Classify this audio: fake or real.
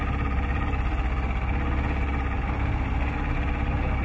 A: real